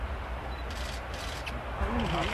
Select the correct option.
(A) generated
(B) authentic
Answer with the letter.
B